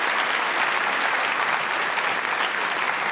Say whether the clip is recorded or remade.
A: recorded